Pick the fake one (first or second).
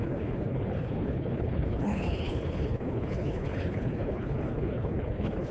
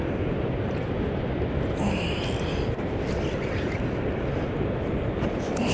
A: first